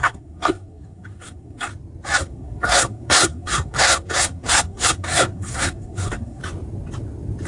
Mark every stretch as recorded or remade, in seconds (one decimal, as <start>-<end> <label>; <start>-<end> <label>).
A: 0.0-1.7 remade; 1.7-2.2 recorded; 2.2-6.4 remade; 6.4-7.5 recorded